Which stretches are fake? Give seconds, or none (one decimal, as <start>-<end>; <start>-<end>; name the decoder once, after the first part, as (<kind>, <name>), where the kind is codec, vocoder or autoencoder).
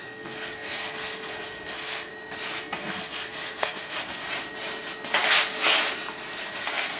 0.0-2.1 (codec, SNAC); 2.6-4.1; 6.5-7.0